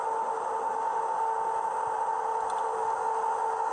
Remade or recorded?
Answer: recorded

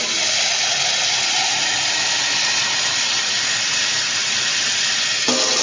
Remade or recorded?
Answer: recorded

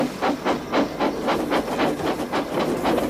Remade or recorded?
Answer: recorded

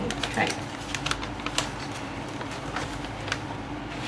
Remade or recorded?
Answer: recorded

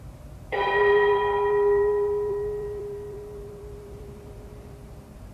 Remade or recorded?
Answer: remade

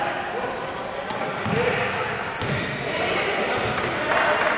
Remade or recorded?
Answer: recorded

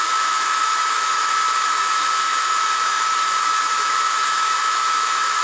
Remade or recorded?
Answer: remade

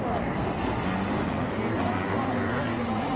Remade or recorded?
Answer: recorded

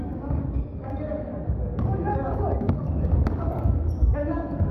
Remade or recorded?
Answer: remade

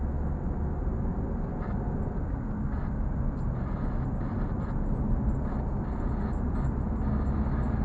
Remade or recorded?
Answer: recorded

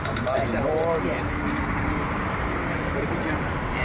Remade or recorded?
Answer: remade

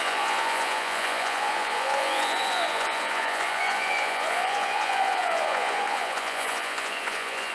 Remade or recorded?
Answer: remade